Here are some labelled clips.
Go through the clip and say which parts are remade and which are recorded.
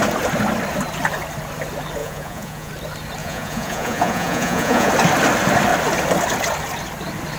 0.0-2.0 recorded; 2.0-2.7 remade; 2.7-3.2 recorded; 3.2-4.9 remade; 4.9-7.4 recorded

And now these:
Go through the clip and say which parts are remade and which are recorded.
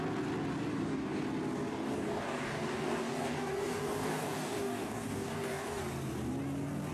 0.0-0.7 recorded; 0.7-1.2 remade; 1.2-1.7 recorded; 1.7-5.8 remade; 5.8-6.9 recorded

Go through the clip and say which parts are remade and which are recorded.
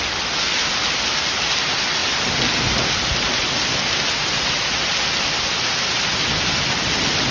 0.0-7.3 recorded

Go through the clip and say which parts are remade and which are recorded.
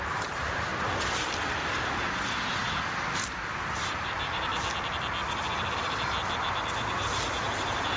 0.0-0.7 remade; 0.7-3.7 recorded; 3.7-4.5 remade; 4.5-6.9 recorded; 6.9-8.0 remade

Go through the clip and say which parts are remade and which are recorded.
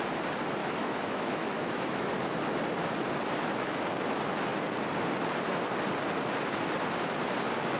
0.0-0.6 recorded; 0.6-2.1 remade; 2.1-7.8 recorded